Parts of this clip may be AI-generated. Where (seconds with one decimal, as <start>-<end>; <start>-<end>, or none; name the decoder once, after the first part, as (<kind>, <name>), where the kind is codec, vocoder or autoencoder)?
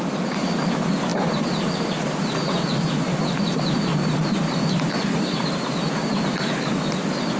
none